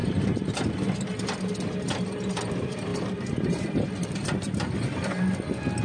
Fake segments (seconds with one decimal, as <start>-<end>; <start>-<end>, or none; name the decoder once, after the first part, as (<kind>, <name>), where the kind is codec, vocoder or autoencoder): 0.0-0.5 (vocoder, BigVGAN v2); 2.9-3.9